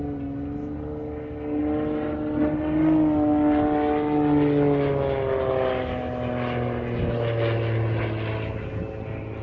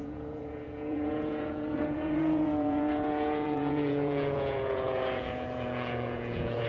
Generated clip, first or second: second